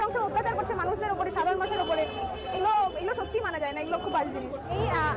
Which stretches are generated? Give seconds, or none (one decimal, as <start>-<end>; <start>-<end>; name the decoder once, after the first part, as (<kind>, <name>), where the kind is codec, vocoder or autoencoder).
0.0-0.6 (vocoder, BigVGAN v2); 2.5-4.4